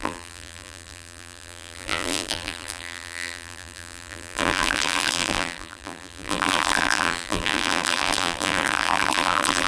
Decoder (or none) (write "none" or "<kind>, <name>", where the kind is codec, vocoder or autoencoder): vocoder, BigVGAN v2